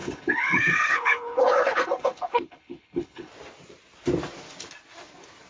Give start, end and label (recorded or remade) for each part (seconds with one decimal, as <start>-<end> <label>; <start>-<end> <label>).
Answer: 0.0-3.3 remade; 3.3-5.5 recorded